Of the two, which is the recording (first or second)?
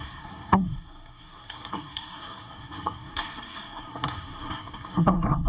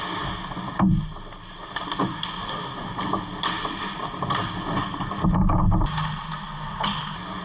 second